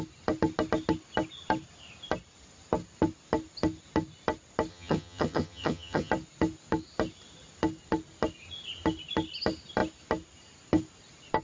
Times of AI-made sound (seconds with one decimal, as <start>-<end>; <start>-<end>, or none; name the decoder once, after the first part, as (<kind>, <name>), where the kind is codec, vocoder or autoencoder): 4.7-6.1 (vocoder, HiFi-GAN)